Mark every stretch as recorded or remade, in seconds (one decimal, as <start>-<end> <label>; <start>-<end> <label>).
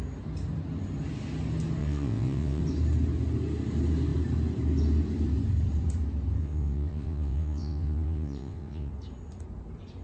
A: 0.0-1.8 recorded; 1.8-2.6 remade; 2.6-6.4 recorded; 6.4-8.9 remade; 8.9-10.0 recorded